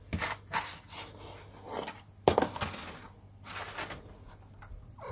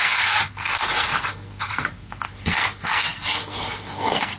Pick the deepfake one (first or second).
second